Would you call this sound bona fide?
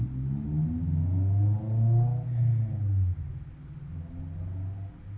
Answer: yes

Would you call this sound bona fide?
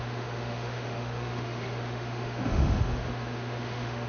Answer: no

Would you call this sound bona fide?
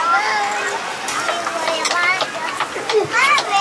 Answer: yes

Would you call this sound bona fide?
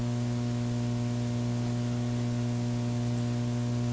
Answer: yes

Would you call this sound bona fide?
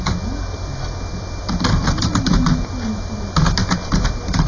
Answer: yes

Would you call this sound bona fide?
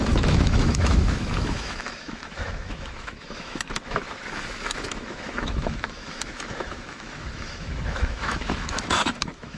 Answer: no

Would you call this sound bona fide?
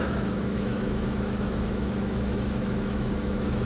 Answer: no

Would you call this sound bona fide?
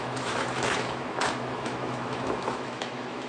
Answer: no